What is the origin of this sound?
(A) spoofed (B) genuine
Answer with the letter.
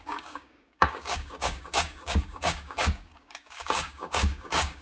A